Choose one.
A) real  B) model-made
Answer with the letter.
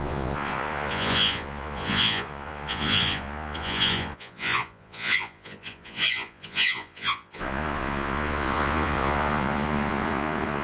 B